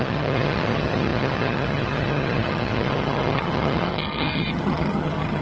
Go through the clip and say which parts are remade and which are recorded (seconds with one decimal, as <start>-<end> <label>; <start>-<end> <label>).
0.0-5.4 remade